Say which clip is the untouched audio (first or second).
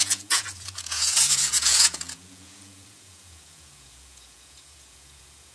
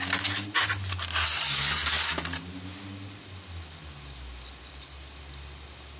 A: second